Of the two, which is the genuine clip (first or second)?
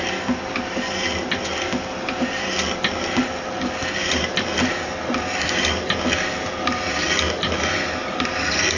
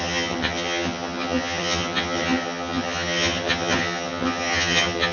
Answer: first